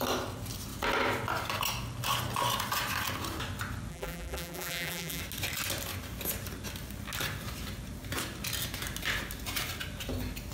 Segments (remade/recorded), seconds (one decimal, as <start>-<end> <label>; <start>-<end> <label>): 0.0-3.9 recorded; 3.9-5.2 remade; 5.2-10.5 recorded

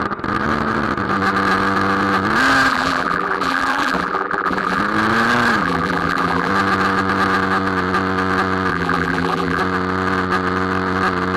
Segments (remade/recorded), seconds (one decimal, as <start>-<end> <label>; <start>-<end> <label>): 0.0-2.7 recorded; 2.7-4.8 remade; 4.8-5.6 recorded; 5.6-6.5 remade; 6.5-8.7 recorded; 8.7-9.6 remade; 9.6-11.4 recorded

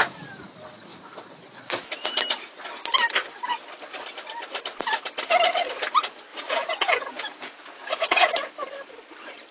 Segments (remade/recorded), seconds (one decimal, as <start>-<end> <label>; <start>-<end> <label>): 0.0-6.3 recorded; 6.3-8.5 remade; 8.5-9.5 recorded

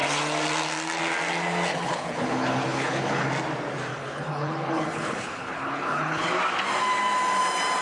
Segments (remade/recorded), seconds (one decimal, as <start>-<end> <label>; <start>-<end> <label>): 0.0-1.7 recorded; 1.7-3.3 remade; 3.3-3.9 recorded; 3.9-6.3 remade; 6.3-7.8 recorded

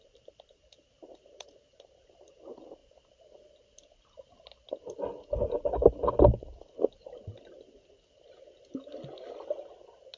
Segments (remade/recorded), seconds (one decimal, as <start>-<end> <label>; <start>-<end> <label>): 0.0-2.8 remade; 2.8-5.3 recorded; 5.3-6.0 remade; 6.0-10.2 recorded

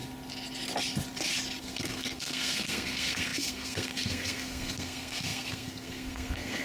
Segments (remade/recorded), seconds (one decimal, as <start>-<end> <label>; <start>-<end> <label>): 0.0-1.6 recorded; 1.6-6.6 remade

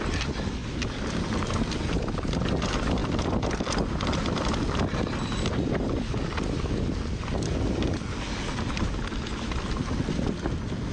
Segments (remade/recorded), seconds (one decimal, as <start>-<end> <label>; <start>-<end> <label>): 0.0-10.9 recorded